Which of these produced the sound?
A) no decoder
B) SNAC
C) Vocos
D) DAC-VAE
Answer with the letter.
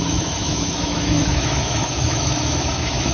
D